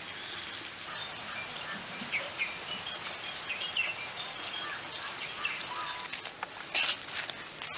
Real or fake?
real